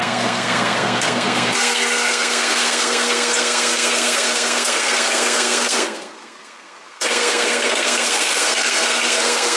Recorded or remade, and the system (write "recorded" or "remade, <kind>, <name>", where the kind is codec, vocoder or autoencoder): remade, codec, SNAC